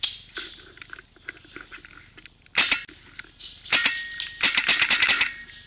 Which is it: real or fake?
real